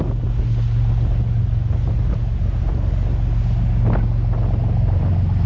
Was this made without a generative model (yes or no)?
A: yes